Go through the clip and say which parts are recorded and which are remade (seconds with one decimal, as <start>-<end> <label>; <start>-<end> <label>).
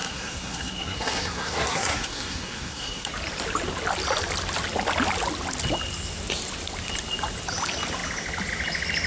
0.0-3.1 remade; 3.1-9.1 recorded